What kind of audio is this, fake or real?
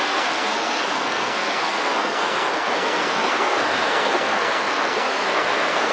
fake